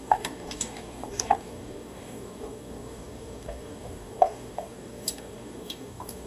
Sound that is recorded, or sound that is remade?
remade